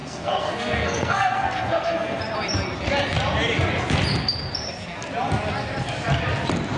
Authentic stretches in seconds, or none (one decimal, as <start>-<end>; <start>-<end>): 2.2-6.8